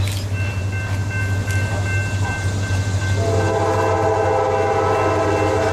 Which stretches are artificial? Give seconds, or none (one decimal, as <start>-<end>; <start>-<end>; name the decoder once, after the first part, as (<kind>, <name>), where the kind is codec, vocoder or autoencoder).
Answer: none